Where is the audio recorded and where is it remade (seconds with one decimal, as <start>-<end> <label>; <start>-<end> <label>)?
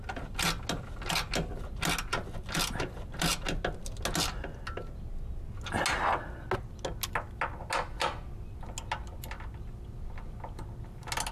0.0-11.3 recorded